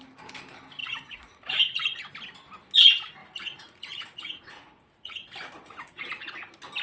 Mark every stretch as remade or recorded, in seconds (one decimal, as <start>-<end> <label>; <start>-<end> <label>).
0.0-0.8 recorded; 0.8-2.0 remade; 2.0-3.2 recorded; 3.2-6.0 remade; 6.0-6.8 recorded